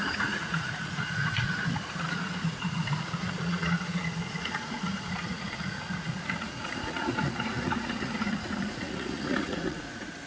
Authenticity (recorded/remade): remade